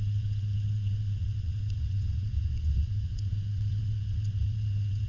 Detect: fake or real fake